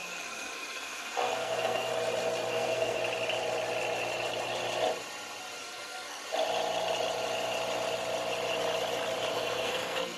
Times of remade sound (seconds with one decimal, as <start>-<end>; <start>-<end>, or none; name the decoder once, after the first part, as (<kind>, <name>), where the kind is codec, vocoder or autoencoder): 0.0-1.9 (codec, SNAC); 2.5-3.0; 5.6-6.2; 9.3-10.2